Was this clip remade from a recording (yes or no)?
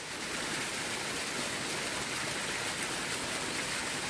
no